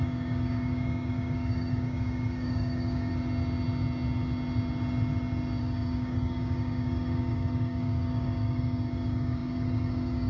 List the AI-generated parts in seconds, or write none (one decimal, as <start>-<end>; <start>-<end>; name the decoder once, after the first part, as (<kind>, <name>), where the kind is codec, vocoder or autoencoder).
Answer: 0.0-3.1 (codec, DAC); 5.6-10.3